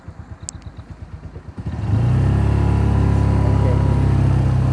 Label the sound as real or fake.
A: real